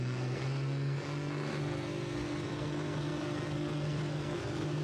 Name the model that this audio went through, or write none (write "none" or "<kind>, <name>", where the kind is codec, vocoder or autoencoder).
codec, SNAC